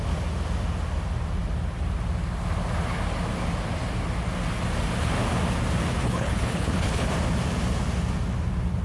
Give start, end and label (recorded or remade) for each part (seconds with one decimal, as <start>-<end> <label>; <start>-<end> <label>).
0.0-6.0 recorded; 6.0-7.1 remade; 7.1-8.8 recorded